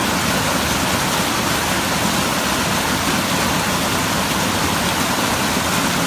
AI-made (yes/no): no